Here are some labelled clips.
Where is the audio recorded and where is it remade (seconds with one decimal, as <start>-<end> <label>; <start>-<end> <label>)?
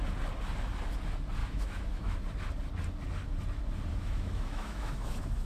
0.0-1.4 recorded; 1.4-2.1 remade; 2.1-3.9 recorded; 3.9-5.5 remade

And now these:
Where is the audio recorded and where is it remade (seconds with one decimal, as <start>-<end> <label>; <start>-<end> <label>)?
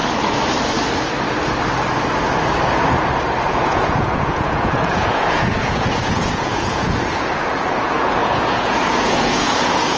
0.0-3.5 recorded; 3.5-10.0 remade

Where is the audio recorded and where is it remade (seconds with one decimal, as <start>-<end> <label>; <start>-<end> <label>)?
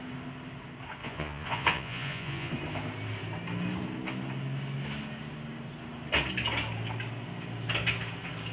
0.0-1.0 recorded; 1.0-2.5 remade; 2.5-8.5 recorded